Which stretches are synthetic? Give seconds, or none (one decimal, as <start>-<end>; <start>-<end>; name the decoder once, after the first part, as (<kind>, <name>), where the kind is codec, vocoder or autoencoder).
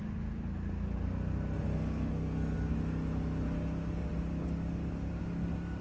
1.7-2.8 (codec, SNAC)